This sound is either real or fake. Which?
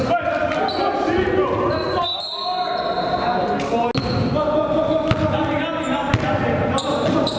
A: real